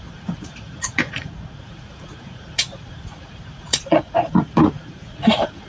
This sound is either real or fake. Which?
fake